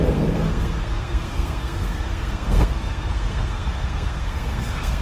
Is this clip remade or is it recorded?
remade